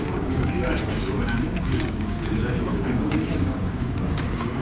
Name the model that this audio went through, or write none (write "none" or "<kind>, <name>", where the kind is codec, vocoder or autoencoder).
codec, DAC